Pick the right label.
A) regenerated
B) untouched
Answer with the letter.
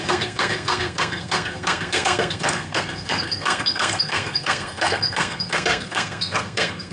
A